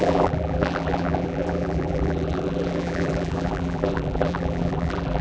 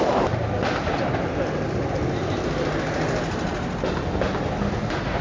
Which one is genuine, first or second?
second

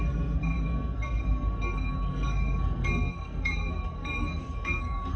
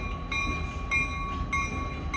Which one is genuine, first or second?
second